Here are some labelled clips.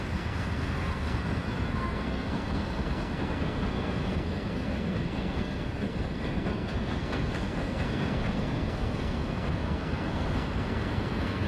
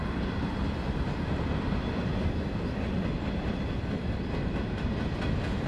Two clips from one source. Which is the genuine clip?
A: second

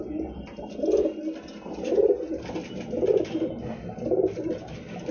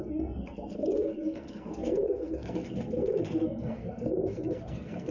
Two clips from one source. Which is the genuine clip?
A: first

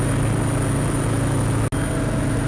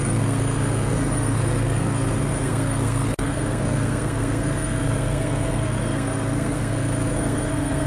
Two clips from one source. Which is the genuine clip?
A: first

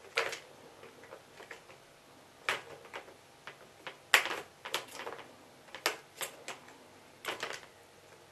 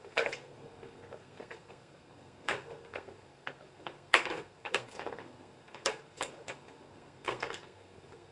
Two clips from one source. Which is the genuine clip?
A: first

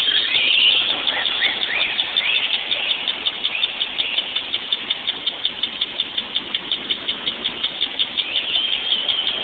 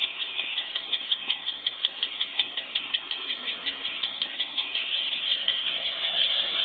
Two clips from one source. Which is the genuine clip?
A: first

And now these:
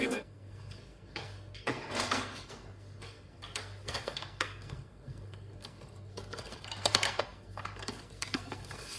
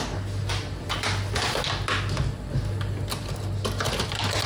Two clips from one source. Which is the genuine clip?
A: second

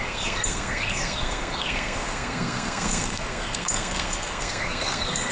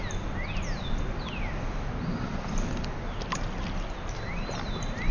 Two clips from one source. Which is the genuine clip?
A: second